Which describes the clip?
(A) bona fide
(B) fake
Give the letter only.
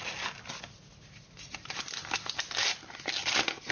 A